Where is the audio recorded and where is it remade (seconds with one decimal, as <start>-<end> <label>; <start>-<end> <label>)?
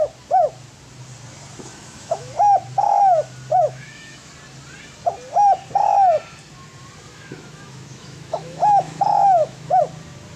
0.0-1.7 recorded; 1.7-2.3 remade; 2.3-3.6 recorded; 3.6-4.3 remade; 4.3-7.1 recorded; 7.1-9.8 remade; 9.8-10.4 recorded